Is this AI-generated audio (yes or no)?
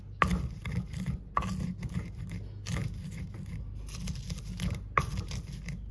no